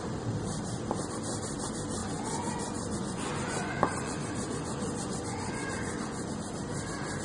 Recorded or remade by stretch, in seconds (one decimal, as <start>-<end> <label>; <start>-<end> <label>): 0.0-2.0 recorded; 2.0-6.3 remade; 6.3-7.2 recorded